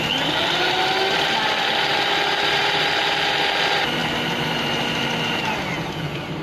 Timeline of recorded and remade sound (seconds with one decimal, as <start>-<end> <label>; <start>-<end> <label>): 0.0-6.4 recorded

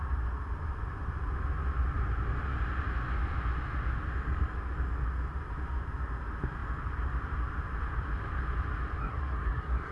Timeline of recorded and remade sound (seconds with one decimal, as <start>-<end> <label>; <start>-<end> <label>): 0.0-9.0 recorded; 9.0-9.9 remade

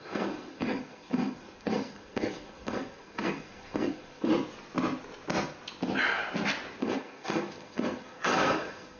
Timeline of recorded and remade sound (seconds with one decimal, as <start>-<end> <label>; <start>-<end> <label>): 0.0-4.3 remade; 4.3-6.8 recorded; 6.8-9.0 remade

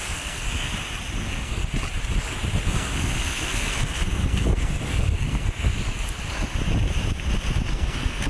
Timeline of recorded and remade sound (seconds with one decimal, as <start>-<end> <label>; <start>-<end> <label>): 0.0-0.7 remade; 0.7-1.2 recorded; 1.2-1.6 remade; 1.6-2.6 recorded; 2.6-5.7 remade; 5.7-7.7 recorded; 7.7-8.3 remade

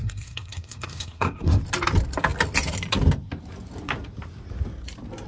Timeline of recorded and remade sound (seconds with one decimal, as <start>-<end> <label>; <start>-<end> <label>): 0.0-1.6 remade; 1.6-5.3 recorded

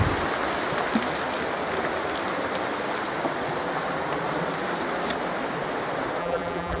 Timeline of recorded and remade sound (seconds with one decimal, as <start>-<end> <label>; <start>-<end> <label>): 0.0-6.2 recorded; 6.2-6.8 remade

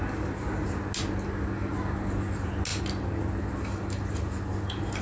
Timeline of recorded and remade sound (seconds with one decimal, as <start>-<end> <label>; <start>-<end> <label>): 0.0-5.0 recorded

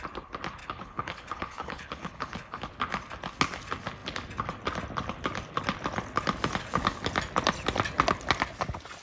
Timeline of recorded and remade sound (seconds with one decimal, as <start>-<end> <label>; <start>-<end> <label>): 0.0-0.6 recorded; 0.6-2.6 remade; 2.6-9.0 recorded